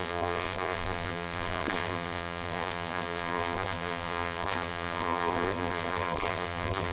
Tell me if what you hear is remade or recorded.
remade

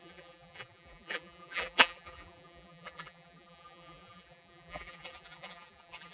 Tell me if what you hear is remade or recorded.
remade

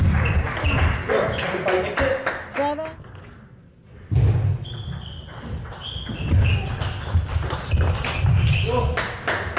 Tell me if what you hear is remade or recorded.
recorded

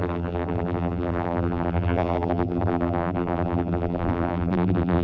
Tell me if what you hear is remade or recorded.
remade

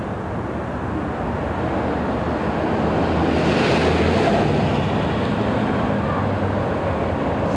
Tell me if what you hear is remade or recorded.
recorded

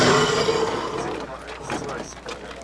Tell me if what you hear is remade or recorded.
recorded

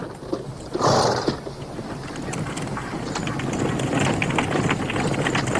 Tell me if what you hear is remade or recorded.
recorded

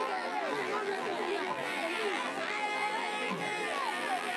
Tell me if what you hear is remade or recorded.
remade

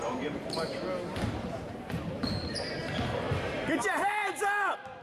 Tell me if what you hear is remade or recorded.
remade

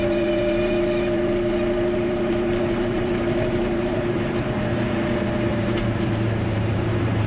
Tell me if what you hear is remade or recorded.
remade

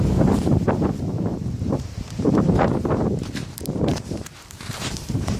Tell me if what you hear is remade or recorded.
remade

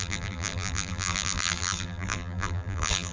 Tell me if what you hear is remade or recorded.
remade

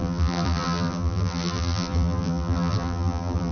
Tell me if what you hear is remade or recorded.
remade